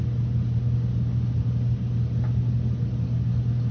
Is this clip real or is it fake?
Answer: real